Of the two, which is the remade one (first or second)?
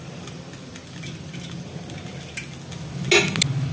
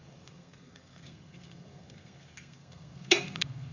second